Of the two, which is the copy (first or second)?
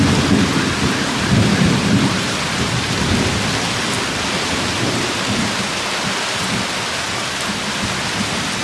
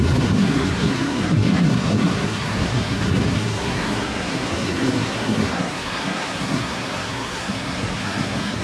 second